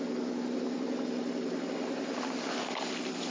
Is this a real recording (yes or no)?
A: yes